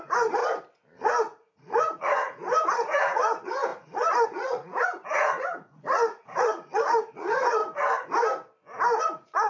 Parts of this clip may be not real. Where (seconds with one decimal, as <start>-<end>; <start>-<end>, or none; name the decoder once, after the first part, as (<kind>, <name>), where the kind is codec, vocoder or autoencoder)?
0.0-0.4 (vocoder, Vocos); 1.0-7.6; 9.0-9.5